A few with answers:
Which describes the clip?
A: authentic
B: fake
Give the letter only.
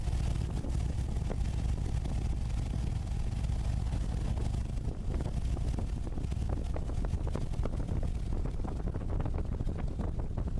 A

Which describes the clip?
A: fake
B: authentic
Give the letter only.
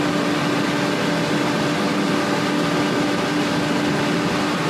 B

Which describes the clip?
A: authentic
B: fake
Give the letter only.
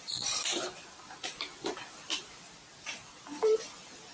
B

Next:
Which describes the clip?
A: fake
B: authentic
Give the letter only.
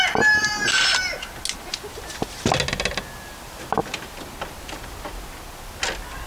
B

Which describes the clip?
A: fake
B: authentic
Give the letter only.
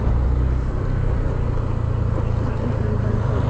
B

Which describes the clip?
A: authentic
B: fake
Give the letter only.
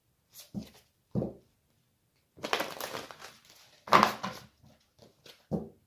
A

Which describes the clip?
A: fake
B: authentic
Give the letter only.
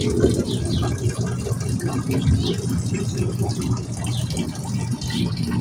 B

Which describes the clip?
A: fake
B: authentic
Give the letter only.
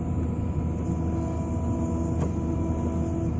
B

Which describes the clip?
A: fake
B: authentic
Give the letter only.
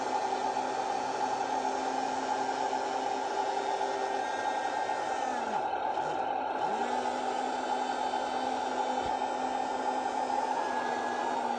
B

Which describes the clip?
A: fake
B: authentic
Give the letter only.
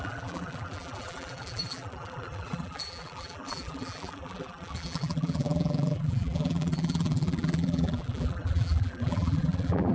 A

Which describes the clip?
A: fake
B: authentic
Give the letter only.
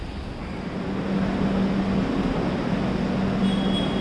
B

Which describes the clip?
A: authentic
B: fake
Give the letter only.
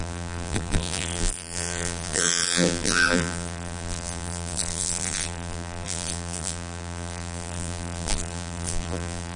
B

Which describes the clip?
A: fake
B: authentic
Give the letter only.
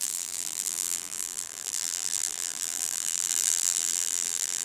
A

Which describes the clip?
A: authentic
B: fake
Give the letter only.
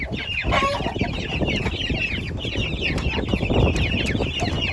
A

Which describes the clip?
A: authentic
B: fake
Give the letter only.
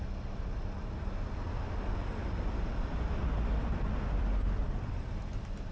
B